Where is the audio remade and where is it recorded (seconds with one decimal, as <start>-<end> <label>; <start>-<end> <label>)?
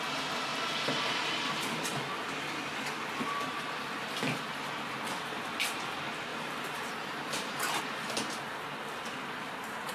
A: 0.0-6.3 recorded; 6.3-7.8 remade; 7.8-9.9 recorded